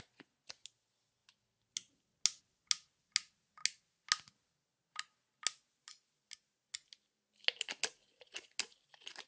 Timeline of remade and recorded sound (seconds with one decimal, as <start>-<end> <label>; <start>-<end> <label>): 0.0-9.3 recorded